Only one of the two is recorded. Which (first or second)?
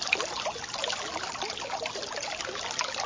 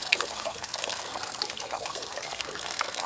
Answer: first